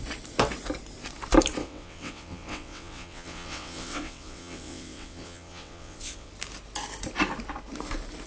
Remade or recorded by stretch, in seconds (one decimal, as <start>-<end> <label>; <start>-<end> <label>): 0.0-1.6 recorded; 1.6-6.3 remade; 6.3-8.3 recorded